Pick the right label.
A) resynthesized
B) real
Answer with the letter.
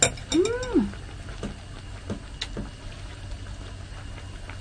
B